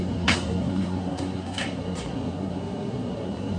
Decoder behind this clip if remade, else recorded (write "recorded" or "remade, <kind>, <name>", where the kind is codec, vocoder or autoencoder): remade, codec, SNAC